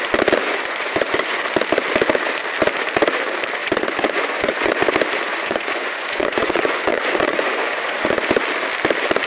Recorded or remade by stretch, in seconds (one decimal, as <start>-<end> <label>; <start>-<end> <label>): 0.0-0.4 recorded; 0.4-1.4 remade; 1.4-3.6 recorded; 3.6-4.7 remade; 4.7-5.3 recorded; 5.3-8.2 remade; 8.2-9.3 recorded